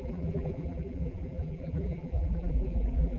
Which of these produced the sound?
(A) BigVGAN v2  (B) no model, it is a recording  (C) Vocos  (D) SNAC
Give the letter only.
A